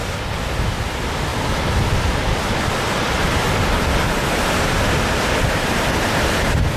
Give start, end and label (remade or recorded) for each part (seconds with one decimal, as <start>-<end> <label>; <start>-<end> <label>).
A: 0.0-1.3 recorded; 1.3-5.4 remade; 5.4-6.8 recorded